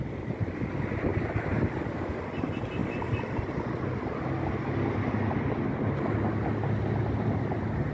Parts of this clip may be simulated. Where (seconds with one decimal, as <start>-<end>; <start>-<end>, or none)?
none

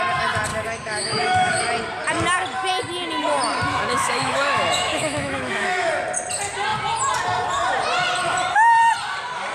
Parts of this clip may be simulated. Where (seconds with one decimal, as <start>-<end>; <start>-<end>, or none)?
0.5-1.6; 3.7-5.9

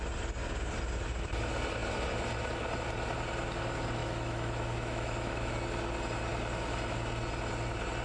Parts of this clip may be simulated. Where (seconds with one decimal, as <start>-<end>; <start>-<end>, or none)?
4.0-5.5

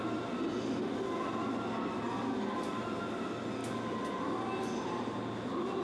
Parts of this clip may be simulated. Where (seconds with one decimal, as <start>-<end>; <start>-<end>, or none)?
none

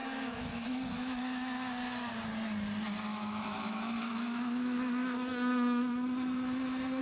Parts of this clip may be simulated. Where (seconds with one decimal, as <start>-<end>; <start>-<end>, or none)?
0.0-2.1; 3.1-7.0

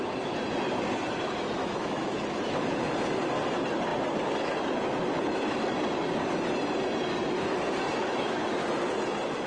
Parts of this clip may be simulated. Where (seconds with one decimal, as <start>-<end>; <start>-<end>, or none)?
1.6-2.1; 8.0-8.5